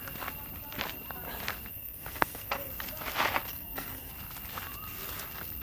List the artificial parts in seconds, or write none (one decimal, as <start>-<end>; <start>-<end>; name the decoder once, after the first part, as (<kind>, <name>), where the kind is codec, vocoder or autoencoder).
1.7-2.7 (codec, SNAC); 3.5-4.1